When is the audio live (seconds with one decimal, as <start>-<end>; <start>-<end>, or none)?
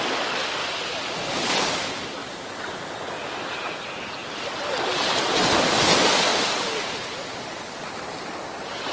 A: 0.0-0.6; 1.7-4.2; 5.0-6.3; 7.7-8.9